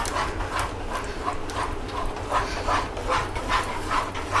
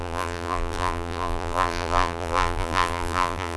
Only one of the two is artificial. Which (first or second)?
second